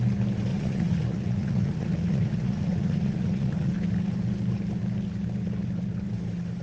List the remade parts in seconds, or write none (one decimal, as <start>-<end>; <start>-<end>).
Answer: 0.5-3.7